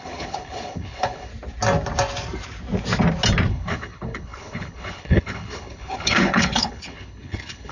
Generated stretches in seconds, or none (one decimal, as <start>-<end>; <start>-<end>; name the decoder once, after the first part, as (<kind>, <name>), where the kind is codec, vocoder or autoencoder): 0.0-1.3 (codec, HILCodec); 3.5-7.7